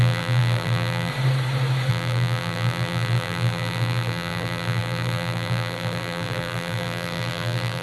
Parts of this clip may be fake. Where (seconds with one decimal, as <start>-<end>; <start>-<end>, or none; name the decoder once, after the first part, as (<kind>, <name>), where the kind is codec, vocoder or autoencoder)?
0.0-1.1 (vocoder, BigVGAN v2); 1.9-7.8